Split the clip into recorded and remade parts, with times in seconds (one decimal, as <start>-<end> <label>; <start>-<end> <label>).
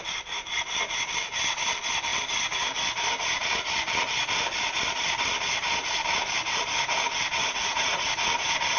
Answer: 0.0-7.4 recorded; 7.4-8.1 remade; 8.1-8.8 recorded